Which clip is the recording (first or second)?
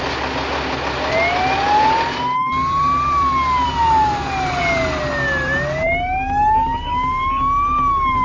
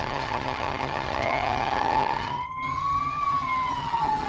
first